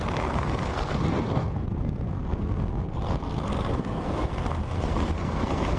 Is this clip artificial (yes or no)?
yes